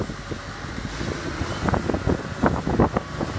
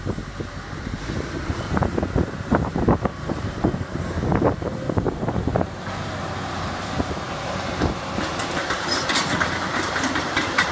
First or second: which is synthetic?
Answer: second